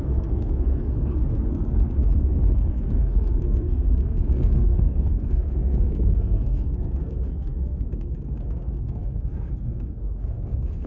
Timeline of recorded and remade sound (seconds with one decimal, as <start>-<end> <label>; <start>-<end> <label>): 0.0-10.9 remade